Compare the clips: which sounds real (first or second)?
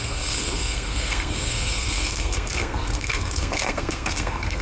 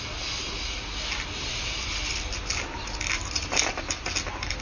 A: second